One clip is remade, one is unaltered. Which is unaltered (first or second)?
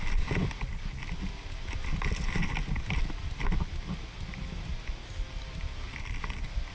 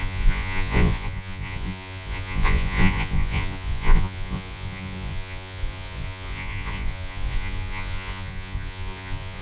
first